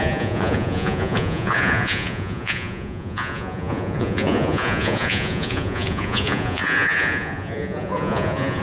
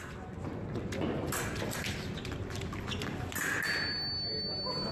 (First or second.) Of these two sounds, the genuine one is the second